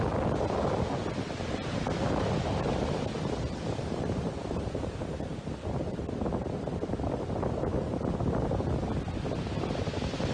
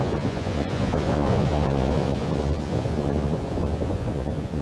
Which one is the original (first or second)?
first